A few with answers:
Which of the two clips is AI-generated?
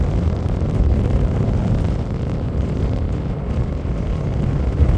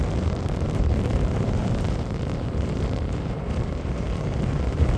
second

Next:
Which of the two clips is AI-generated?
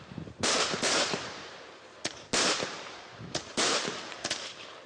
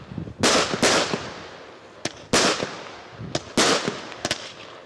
first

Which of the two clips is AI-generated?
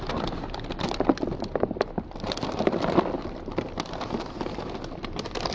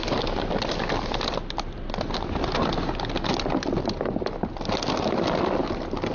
first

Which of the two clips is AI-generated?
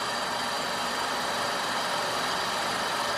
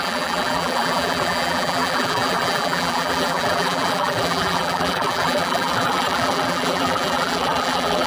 second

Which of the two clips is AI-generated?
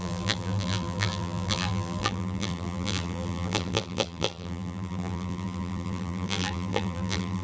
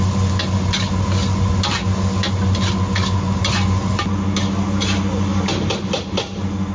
first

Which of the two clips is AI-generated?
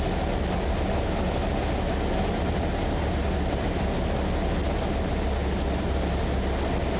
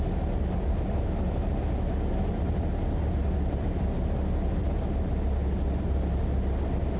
second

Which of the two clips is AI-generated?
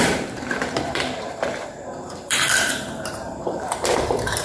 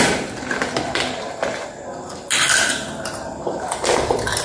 first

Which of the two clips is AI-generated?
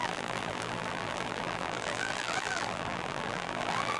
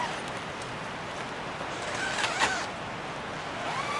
first